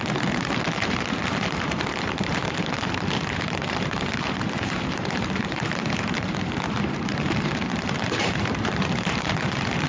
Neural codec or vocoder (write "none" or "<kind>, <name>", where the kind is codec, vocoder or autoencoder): vocoder, BigVGAN v2